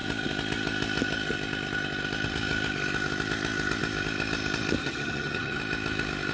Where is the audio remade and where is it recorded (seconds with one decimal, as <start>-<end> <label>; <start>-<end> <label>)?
0.0-4.8 recorded; 4.8-5.6 remade; 5.6-6.3 recorded